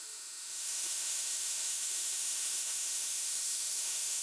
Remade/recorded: remade